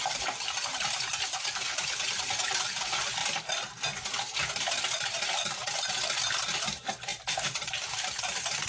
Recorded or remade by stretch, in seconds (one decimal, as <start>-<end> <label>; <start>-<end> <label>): 0.0-3.2 remade; 3.2-6.3 recorded; 6.3-8.7 remade